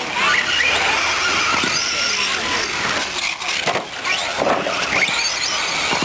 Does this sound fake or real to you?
real